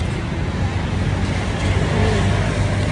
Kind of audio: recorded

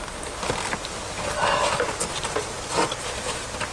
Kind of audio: recorded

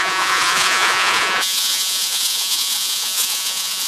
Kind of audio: remade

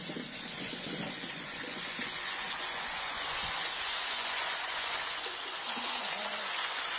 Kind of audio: remade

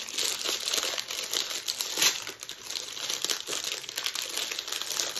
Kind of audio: recorded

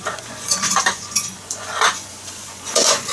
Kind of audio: remade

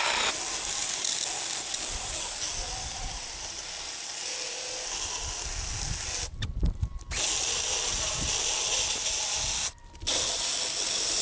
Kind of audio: recorded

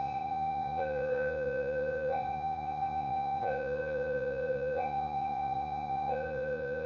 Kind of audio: remade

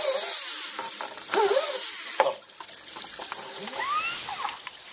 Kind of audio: recorded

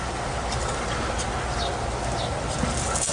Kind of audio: recorded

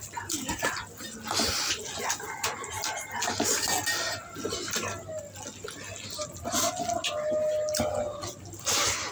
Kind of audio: recorded